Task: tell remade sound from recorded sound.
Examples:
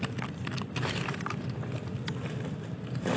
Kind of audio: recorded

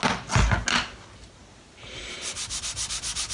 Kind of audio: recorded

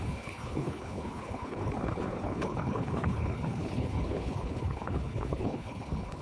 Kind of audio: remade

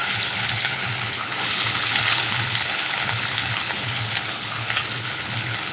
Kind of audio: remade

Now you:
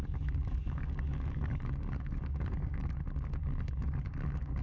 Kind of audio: remade